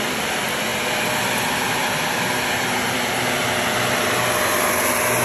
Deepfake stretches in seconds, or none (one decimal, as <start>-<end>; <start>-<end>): none